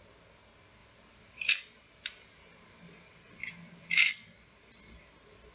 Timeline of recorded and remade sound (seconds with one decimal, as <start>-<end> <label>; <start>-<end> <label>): 0.0-0.8 recorded; 0.8-4.1 remade; 4.1-5.5 recorded